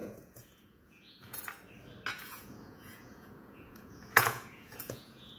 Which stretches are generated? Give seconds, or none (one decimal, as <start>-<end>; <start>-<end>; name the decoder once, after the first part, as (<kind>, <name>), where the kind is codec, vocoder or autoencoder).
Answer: 0.0-1.4 (vocoder, Vocos); 2.1-5.4